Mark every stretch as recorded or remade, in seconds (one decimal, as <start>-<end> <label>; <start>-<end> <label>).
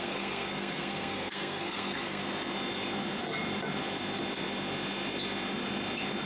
0.0-2.2 remade; 2.2-6.3 recorded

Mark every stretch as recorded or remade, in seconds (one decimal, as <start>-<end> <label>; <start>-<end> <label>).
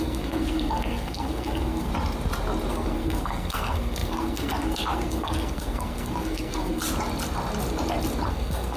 0.0-1.9 remade; 1.9-2.7 recorded; 2.7-6.8 remade; 6.8-8.3 recorded; 8.3-8.8 remade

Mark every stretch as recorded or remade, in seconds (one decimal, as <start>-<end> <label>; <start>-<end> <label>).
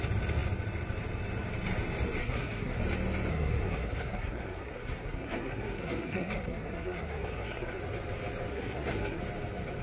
0.0-2.2 recorded; 2.2-2.8 remade; 2.8-3.3 recorded; 3.3-7.8 remade; 7.8-8.5 recorded; 8.5-9.2 remade; 9.2-9.8 recorded